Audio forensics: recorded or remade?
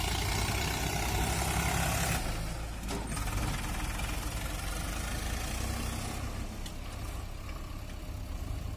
recorded